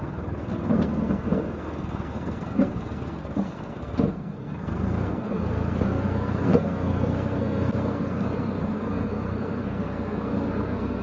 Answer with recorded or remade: remade